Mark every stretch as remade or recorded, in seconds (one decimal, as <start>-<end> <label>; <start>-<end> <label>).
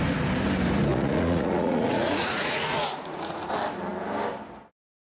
0.0-0.9 recorded; 0.9-3.5 remade; 3.5-5.0 recorded